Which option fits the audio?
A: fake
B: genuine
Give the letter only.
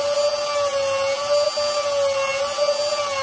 B